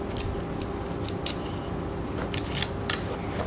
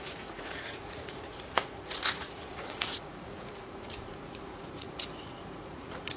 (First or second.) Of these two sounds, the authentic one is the first